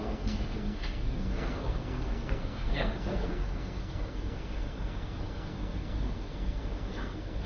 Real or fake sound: fake